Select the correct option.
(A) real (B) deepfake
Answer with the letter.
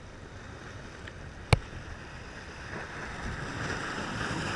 A